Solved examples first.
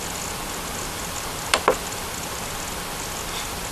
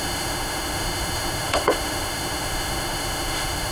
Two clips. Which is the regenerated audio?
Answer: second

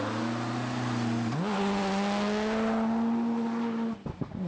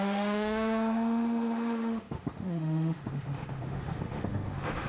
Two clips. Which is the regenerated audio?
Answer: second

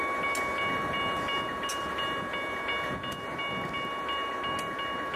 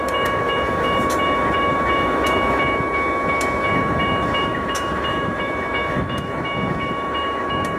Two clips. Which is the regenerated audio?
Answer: second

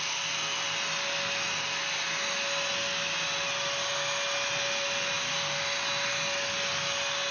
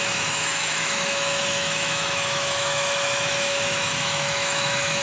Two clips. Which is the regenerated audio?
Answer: second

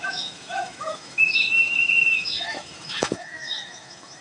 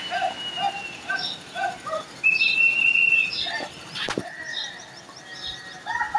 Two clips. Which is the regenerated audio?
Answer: first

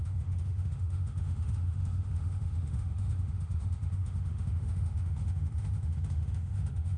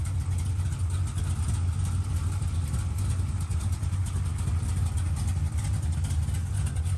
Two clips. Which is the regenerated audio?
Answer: first